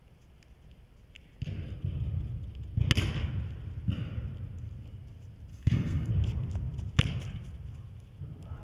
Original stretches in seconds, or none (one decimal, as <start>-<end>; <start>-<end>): 0.0-5.5; 6.1-8.6